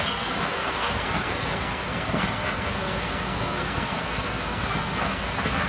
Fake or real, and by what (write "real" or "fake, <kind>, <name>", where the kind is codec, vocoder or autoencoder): fake, codec, SNAC